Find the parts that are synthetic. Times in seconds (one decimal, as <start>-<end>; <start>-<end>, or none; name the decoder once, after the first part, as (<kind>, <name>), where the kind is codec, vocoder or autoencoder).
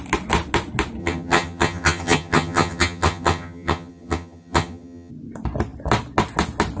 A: 1.0-5.1 (vocoder, HiFi-GAN)